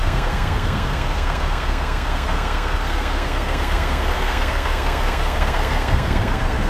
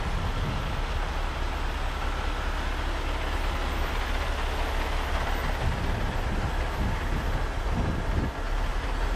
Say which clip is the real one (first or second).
second